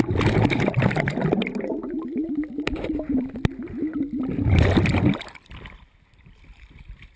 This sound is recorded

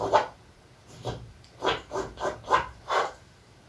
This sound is remade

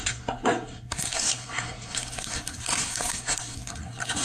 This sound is remade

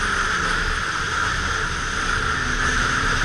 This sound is recorded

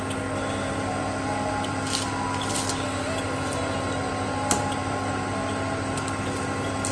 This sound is recorded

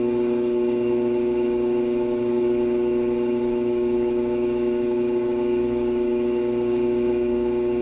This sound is remade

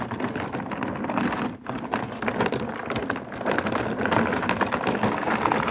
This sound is recorded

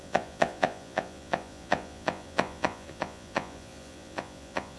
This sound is remade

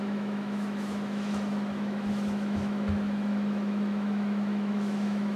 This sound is remade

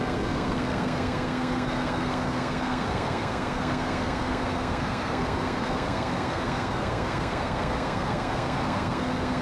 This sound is remade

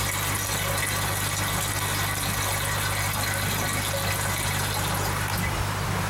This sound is recorded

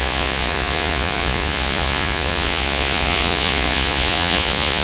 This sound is remade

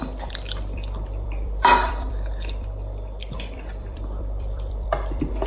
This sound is remade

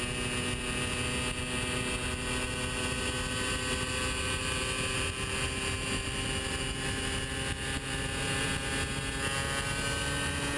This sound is recorded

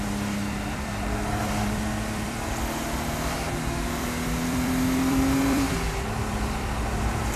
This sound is remade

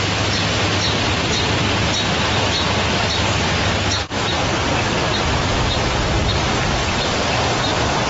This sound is recorded